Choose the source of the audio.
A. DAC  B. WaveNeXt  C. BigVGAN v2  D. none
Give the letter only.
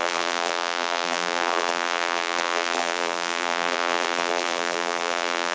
C